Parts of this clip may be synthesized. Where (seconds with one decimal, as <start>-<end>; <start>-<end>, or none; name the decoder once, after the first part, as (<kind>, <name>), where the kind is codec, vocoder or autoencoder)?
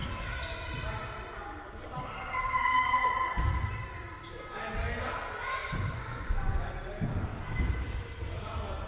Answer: 5.6-6.7 (vocoder, Vocos)